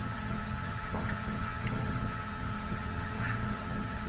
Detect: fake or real fake